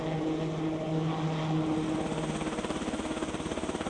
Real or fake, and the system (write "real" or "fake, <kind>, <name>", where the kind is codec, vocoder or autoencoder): real